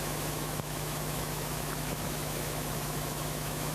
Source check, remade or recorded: remade